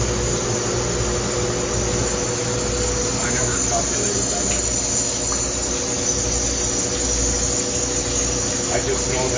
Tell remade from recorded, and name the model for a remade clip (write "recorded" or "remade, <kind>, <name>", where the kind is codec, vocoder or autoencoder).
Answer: recorded